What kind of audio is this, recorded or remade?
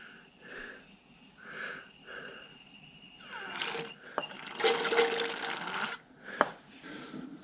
recorded